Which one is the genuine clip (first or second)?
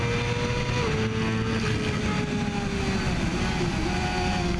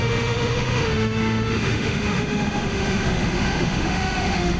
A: first